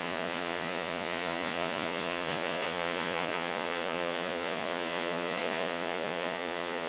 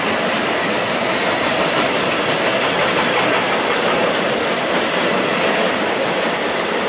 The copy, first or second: first